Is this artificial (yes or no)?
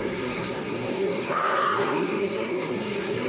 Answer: yes